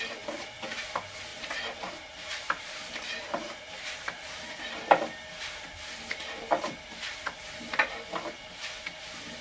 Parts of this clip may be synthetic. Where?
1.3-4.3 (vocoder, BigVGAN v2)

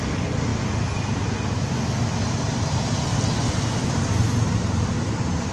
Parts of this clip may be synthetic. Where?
none

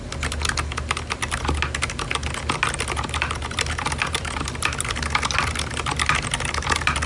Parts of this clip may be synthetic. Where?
none

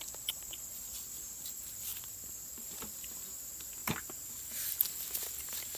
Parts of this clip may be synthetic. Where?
1.9-2.7 (vocoder, BigVGAN v2)

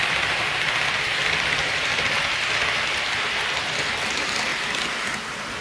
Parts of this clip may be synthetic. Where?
0.0-1.9 (vocoder, BigVGAN v2); 4.0-4.5

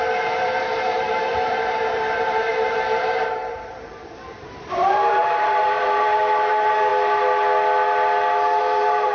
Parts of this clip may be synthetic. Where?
0.0-6.9 (vocoder, BigVGAN v2); 8.6-9.1